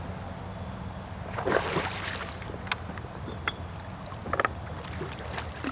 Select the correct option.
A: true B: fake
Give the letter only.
A